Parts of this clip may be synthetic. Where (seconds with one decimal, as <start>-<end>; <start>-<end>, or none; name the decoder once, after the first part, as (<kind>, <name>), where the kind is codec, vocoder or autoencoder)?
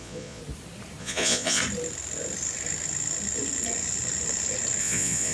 0.0-0.4 (vocoder, Vocos); 1.0-1.6; 4.8-5.3